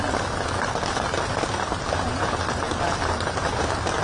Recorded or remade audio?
recorded